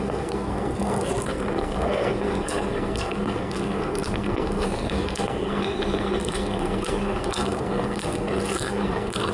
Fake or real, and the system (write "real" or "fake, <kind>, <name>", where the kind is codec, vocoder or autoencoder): fake, codec, SNAC